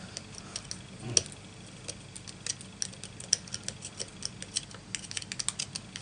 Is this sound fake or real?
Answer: real